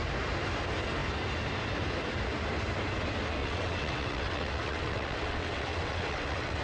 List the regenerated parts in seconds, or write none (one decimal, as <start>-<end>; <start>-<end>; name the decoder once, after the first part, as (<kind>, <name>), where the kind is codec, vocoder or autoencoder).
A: 3.4-6.6 (vocoder, WaveNeXt)